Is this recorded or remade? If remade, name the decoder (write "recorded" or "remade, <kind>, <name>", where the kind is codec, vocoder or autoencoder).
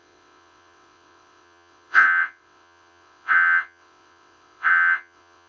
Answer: remade, vocoder, WaveNeXt